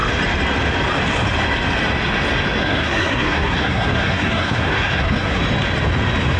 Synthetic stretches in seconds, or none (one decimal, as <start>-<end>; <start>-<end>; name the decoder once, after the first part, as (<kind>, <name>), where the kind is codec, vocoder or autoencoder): 2.6-5.4 (codec, SNAC)